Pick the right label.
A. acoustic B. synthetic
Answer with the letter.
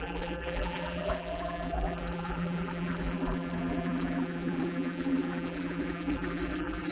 B